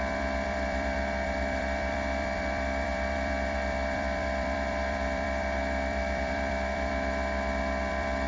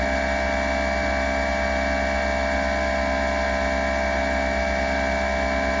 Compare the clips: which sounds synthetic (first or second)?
first